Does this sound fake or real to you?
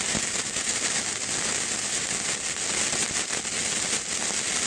real